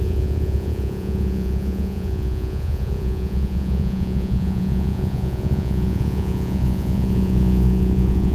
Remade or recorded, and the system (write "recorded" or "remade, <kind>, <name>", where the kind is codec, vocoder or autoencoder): remade, vocoder, Vocos